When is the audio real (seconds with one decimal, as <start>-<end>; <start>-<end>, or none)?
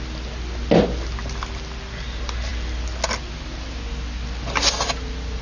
0.0-5.4